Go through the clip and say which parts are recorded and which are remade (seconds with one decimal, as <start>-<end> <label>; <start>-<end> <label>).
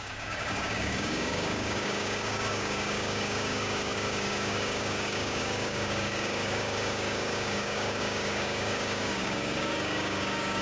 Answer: 0.0-10.6 remade